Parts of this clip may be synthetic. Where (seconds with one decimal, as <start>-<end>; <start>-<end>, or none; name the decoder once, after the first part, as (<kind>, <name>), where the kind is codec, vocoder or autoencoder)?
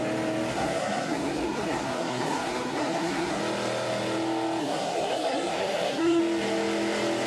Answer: 0.5-3.4 (codec, SNAC); 4.6-6.2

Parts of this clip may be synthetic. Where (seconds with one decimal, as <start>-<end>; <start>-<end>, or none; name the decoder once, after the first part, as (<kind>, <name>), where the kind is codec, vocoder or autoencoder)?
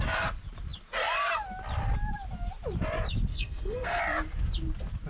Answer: 3.3-4.0 (codec, SNAC)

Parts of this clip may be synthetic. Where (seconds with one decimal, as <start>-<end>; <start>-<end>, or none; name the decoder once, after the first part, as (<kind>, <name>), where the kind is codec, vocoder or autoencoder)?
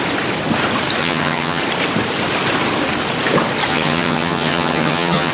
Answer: 1.0-1.6 (vocoder, HiFi-GAN); 3.7-5.3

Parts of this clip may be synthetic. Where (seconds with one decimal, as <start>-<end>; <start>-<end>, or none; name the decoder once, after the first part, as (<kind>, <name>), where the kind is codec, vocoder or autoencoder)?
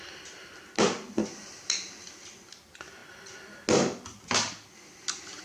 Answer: none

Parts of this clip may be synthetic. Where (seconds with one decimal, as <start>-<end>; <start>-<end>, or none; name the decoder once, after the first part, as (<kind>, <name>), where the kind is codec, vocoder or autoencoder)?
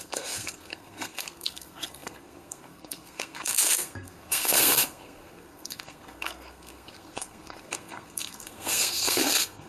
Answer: 0.0-9.7 (codec, SNAC)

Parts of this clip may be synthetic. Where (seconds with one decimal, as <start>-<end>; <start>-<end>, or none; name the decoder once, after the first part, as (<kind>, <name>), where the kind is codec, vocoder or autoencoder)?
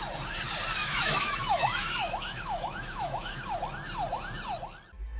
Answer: 0.8-3.6 (autoencoder, DAC-VAE)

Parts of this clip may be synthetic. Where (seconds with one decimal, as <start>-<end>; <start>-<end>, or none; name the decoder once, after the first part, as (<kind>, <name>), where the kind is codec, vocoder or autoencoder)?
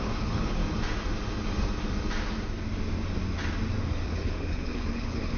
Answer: 0.0-0.6 (codec, HILCodec); 3.8-5.4